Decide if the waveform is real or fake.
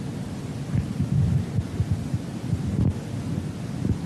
fake